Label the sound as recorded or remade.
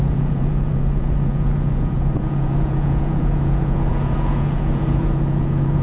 remade